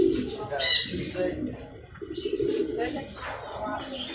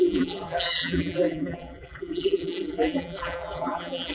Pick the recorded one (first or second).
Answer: first